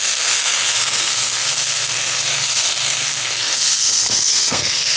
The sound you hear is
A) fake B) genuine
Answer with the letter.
A